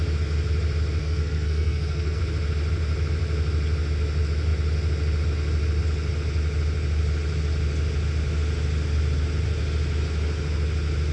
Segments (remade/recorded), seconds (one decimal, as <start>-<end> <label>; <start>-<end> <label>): 0.0-1.0 recorded; 1.0-2.2 remade; 2.2-11.1 recorded